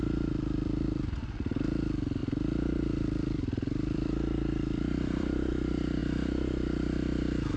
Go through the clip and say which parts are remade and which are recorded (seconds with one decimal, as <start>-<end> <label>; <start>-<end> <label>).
0.0-2.2 recorded; 2.2-5.5 remade; 5.5-7.6 recorded